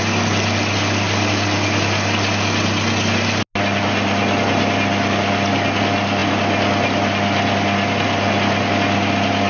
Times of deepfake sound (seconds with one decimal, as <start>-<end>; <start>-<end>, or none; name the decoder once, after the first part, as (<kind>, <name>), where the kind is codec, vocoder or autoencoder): none